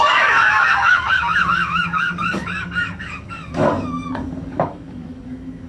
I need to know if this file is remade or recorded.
remade